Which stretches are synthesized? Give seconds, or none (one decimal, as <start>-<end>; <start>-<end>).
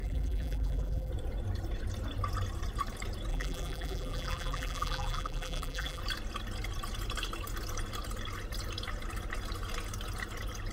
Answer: 0.0-1.1; 3.3-6.0